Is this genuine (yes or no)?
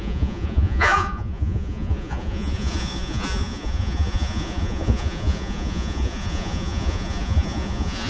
no